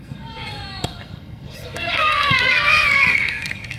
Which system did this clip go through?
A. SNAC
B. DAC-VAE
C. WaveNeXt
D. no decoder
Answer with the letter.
A